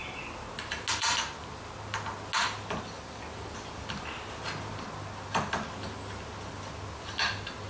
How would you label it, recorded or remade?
recorded